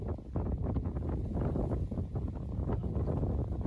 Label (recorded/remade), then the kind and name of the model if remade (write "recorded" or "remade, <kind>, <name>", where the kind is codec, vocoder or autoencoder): recorded